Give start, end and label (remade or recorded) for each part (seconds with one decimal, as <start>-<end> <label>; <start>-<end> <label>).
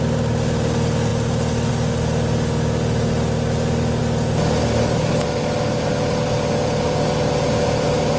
0.0-8.2 recorded